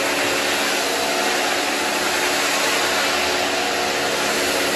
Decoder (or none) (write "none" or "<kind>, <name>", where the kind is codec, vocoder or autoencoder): none